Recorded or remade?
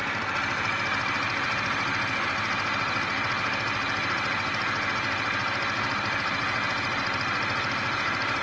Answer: recorded